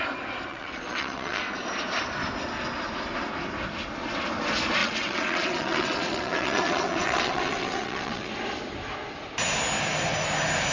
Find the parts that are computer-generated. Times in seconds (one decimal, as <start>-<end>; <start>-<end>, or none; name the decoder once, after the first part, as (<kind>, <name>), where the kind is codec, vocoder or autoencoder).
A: 0.5-1.4 (vocoder, WaveNeXt); 4.8-8.3